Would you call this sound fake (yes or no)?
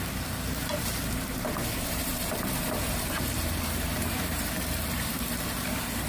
yes